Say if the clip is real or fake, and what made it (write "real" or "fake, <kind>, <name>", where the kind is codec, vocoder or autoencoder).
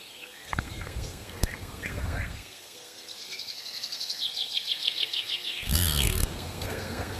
fake, codec, SNAC